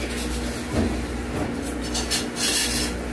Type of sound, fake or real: real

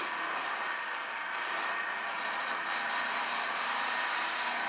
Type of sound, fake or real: real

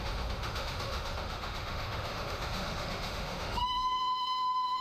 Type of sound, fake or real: fake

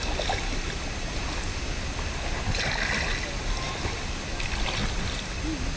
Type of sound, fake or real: real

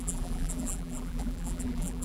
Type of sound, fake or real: fake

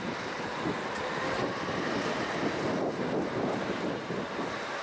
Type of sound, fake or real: real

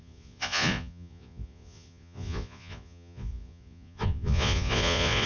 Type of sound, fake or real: fake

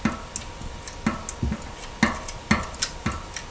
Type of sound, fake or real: real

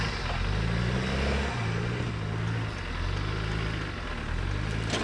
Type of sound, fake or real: real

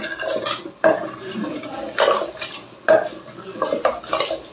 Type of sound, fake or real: real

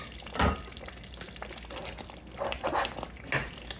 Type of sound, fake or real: real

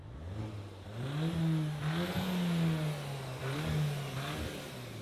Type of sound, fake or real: real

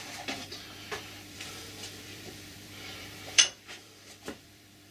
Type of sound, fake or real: fake